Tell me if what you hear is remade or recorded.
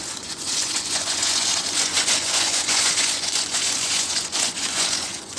remade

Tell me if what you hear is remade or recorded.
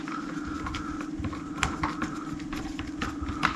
recorded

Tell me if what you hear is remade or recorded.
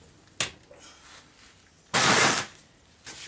recorded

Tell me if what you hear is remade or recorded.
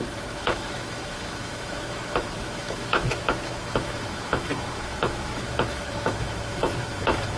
remade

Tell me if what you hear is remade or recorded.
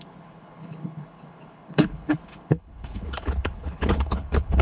remade